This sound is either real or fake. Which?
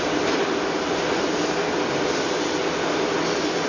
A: real